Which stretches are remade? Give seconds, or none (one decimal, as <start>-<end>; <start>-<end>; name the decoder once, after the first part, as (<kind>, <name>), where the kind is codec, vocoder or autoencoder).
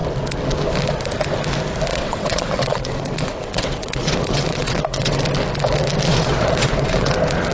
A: 1.9-5.2 (vocoder, WaveNeXt); 6.1-7.1